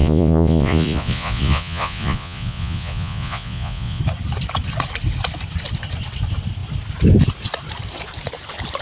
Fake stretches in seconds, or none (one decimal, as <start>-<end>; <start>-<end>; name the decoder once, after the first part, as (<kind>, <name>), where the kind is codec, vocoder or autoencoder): 0.0-4.0 (vocoder, Vocos)

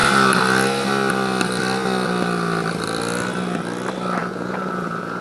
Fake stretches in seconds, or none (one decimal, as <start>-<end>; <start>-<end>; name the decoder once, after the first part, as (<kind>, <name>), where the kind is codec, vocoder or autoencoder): 4.2-5.2 (vocoder, Vocos)

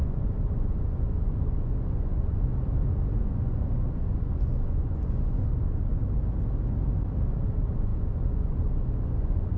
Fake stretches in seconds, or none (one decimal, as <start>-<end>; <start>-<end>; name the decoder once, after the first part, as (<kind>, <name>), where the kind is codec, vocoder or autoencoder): 0.0-2.5 (vocoder, Vocos); 3.2-5.9; 7.5-9.6

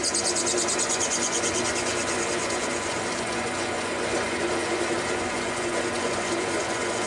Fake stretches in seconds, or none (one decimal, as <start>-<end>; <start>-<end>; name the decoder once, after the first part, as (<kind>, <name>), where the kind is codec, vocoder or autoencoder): 0.0-7.1 (vocoder, Vocos)

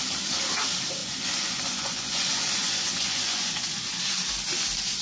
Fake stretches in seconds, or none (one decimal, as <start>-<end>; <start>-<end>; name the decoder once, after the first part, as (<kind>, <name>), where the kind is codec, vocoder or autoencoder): 1.0-4.0 (vocoder, Vocos)